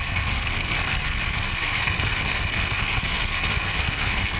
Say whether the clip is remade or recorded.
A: remade